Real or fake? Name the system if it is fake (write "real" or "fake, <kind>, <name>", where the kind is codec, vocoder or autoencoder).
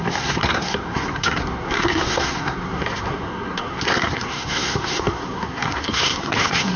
fake, codec, SNAC